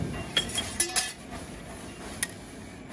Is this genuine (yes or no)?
yes